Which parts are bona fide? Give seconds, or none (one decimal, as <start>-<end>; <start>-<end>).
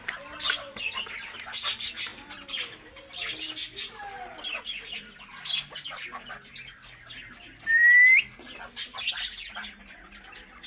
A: 0.0-10.7